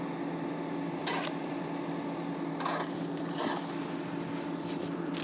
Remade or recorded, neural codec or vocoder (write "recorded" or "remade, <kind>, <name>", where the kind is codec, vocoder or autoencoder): recorded